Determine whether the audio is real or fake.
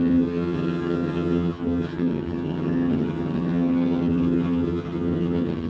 fake